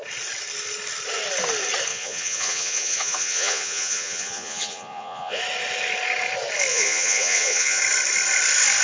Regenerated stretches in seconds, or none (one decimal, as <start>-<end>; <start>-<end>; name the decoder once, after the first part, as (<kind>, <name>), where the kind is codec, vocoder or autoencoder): 1.9-5.4 (vocoder, Vocos); 6.7-7.8